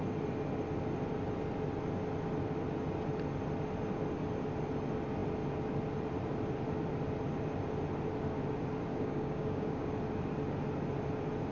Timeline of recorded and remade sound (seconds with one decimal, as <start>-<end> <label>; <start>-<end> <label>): 0.0-8.9 recorded; 8.9-9.9 remade; 9.9-11.5 recorded